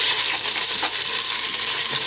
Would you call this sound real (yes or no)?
no